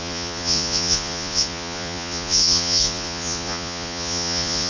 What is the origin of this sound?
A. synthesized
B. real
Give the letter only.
A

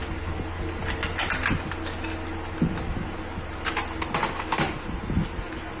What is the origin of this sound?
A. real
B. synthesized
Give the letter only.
A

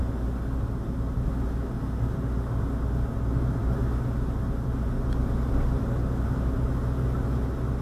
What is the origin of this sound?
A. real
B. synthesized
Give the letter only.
A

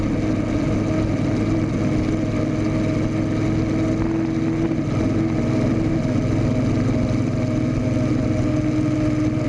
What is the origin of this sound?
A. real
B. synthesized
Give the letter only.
A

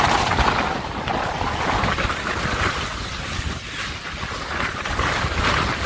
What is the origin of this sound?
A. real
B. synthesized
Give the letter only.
A